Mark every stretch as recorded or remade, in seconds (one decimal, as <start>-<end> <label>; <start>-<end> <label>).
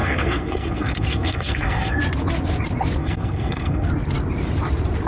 0.0-2.0 remade; 2.0-3.0 recorded; 3.0-3.9 remade; 3.9-5.1 recorded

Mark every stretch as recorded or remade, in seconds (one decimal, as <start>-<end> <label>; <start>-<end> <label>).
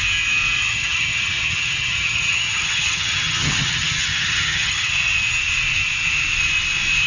0.0-0.6 recorded; 0.6-4.9 remade; 4.9-7.1 recorded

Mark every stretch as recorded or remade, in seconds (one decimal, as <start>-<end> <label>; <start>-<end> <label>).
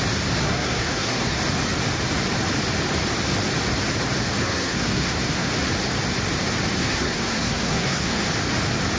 0.0-0.4 recorded; 0.4-1.4 remade; 1.4-4.4 recorded; 4.4-5.5 remade; 5.5-6.8 recorded; 6.8-8.3 remade; 8.3-9.0 recorded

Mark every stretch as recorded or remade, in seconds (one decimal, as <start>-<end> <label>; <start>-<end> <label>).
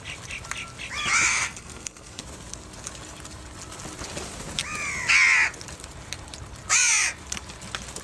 0.0-1.3 recorded; 1.3-2.2 remade; 2.2-8.0 recorded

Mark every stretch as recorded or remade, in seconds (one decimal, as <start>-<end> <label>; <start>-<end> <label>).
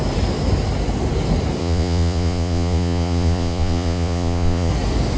0.0-1.6 recorded; 1.6-4.7 remade; 4.7-5.2 recorded